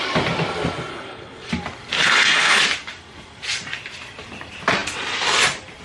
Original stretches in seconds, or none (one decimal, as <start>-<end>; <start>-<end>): 0.0-0.9; 1.5-2.0; 2.6-5.8